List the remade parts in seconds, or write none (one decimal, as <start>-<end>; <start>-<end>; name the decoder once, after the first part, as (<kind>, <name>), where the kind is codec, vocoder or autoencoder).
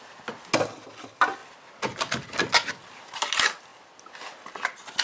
none